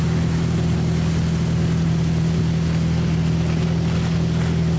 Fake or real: real